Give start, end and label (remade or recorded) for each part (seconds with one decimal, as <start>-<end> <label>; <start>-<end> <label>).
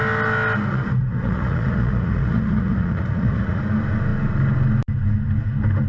0.0-0.7 recorded; 0.7-3.6 remade; 3.6-5.9 recorded